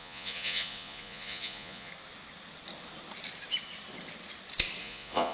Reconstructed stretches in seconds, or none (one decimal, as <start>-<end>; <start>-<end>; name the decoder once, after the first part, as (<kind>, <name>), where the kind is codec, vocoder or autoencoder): 0.0-1.9 (vocoder, Vocos); 4.8-5.3